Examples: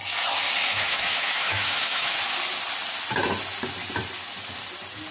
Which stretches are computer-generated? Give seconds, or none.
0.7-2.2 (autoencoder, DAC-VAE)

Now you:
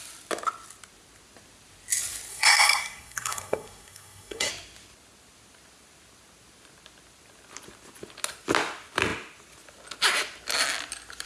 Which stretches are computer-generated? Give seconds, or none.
2.3-4.5 (codec, SNAC)

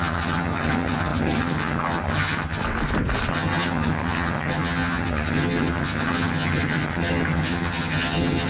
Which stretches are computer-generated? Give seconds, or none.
0.0-2.6 (vocoder, HiFi-GAN); 3.3-8.5